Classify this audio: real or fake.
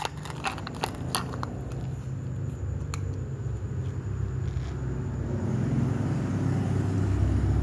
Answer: real